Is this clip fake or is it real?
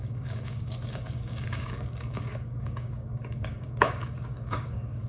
fake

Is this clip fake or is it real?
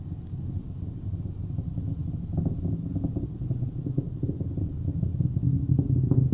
real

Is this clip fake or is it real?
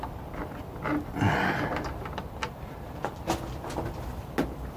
real